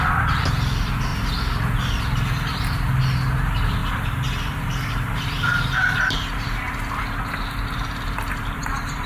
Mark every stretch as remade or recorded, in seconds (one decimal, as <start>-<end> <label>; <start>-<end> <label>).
0.0-3.8 recorded; 3.8-7.0 remade; 7.0-9.1 recorded